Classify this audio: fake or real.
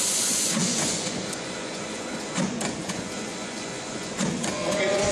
fake